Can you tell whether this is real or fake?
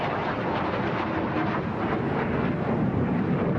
real